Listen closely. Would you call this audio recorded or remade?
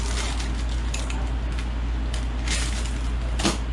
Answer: recorded